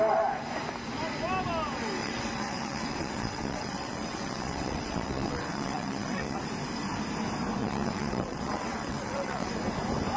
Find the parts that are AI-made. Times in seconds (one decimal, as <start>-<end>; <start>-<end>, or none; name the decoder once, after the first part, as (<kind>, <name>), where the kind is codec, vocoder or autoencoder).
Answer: 2.0-6.4 (vocoder, WaveNeXt); 7.6-9.5